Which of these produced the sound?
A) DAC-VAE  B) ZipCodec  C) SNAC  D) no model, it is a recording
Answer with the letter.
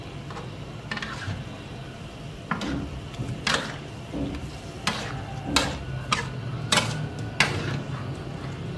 D